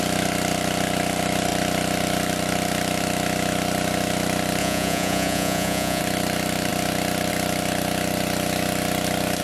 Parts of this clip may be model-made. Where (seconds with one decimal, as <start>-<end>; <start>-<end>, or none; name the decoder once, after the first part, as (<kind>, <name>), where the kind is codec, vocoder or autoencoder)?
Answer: 4.6-6.0 (vocoder, Vocos)